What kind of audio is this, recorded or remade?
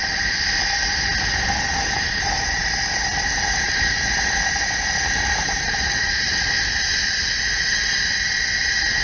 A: recorded